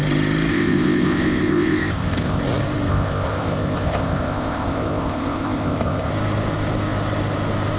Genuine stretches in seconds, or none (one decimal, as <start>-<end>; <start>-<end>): 0.0-0.5; 2.4-2.9; 6.1-7.8

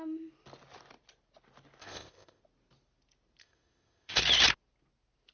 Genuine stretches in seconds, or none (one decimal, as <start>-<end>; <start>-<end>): 0.0-1.8; 2.4-3.4; 4.2-5.3

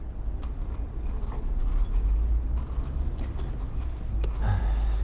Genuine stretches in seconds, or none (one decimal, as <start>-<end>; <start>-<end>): 0.0-5.0

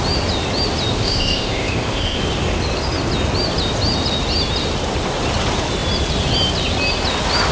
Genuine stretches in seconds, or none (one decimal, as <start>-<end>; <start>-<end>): 0.0-0.9; 2.2-7.5

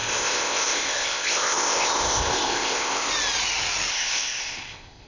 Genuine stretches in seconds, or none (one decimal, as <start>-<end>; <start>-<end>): 3.1-3.9